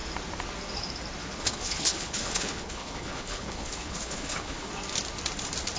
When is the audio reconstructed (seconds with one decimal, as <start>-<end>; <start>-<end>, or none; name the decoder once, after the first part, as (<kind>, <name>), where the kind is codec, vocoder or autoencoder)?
1.2-4.7 (codec, HILCodec)